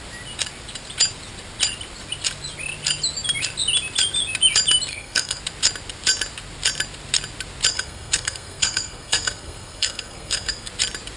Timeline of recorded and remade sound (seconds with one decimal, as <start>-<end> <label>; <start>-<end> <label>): 0.0-4.9 recorded; 4.9-5.4 remade; 5.4-7.7 recorded; 7.7-10.7 remade; 10.7-11.2 recorded